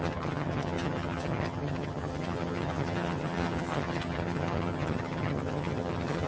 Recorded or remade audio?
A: remade